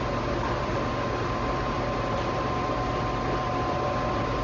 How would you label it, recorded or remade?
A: remade